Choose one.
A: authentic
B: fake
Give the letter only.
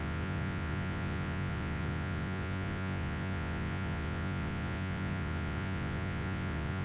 B